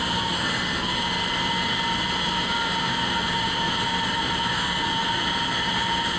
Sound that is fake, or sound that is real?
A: real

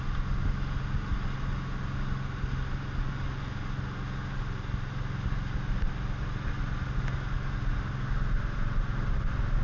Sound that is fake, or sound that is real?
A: real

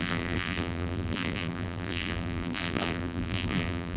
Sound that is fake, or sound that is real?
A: fake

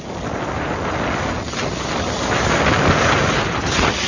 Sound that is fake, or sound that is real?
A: real